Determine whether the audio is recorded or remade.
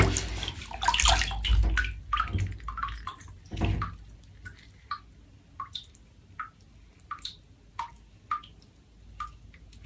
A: recorded